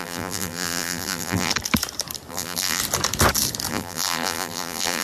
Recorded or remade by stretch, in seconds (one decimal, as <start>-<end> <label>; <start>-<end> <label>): 0.0-1.5 remade; 1.5-2.3 recorded; 2.3-2.8 remade; 2.8-3.7 recorded; 3.7-5.0 remade